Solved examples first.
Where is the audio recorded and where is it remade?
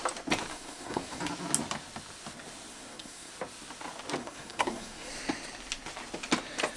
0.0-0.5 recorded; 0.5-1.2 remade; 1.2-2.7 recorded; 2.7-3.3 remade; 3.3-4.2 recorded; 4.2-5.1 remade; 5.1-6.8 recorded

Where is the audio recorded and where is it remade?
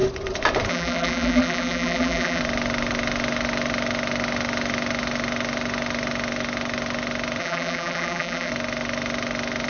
0.0-0.7 recorded; 0.7-2.4 remade; 2.4-7.4 recorded; 7.4-8.5 remade; 8.5-9.7 recorded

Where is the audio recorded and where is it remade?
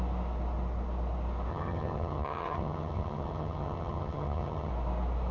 0.0-1.5 recorded; 1.5-4.7 remade; 4.7-5.3 recorded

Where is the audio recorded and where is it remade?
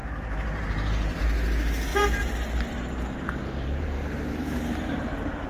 0.0-1.2 remade; 1.2-1.9 recorded; 1.9-4.7 remade; 4.7-5.5 recorded